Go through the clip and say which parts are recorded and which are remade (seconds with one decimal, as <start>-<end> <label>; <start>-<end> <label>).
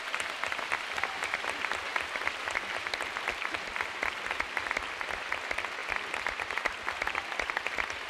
0.0-1.9 recorded; 1.9-3.3 remade; 3.3-8.1 recorded